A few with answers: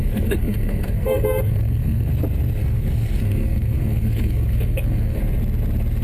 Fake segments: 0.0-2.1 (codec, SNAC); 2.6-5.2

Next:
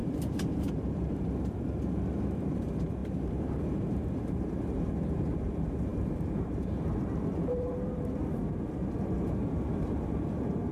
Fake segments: 0.0-10.7 (vocoder, BigVGAN v2)